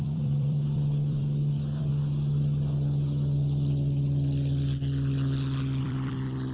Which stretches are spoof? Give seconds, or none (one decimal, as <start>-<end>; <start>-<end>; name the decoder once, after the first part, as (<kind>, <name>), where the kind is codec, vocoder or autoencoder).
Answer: 0.0-1.9 (vocoder, BigVGAN v2); 5.8-6.5